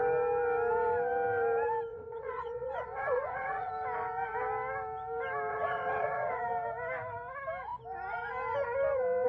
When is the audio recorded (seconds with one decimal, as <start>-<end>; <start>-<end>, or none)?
0.0-1.9; 3.7-5.5; 6.4-9.3